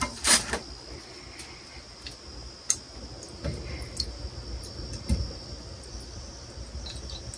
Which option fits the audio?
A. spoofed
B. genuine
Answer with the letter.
B